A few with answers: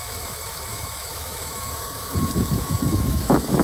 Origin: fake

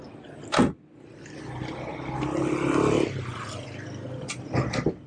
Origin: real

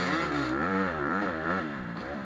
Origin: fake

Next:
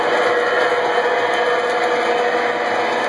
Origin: real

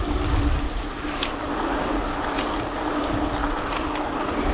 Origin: real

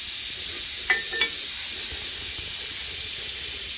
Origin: real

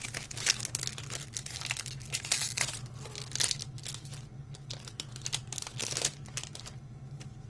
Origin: real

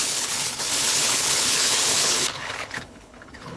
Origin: fake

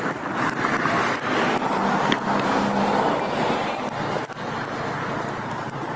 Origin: real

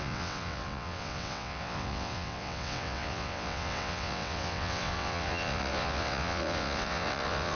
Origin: fake